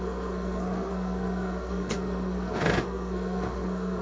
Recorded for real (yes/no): no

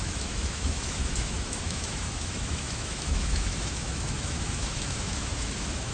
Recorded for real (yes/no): no